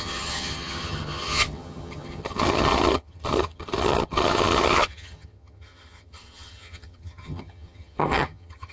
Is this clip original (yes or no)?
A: no